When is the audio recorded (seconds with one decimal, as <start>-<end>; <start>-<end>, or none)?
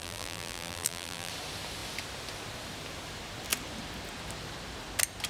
1.3-5.3